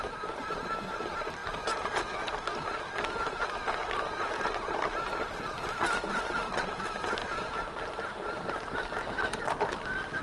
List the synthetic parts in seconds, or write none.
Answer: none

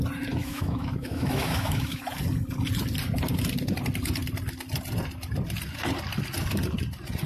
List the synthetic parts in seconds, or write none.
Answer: 0.4-2.0

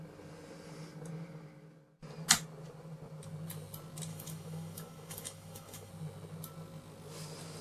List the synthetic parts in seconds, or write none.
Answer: 4.1-5.9

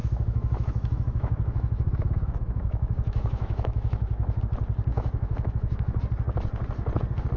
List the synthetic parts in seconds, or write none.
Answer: 0.0-4.4; 4.9-6.0

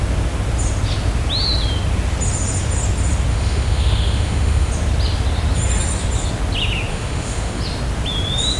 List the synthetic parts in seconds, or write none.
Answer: 3.3-4.7; 6.9-7.6

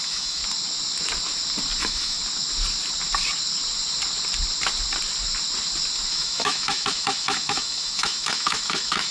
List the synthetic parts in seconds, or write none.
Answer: 0.0-0.4; 1.8-2.2; 6.1-9.1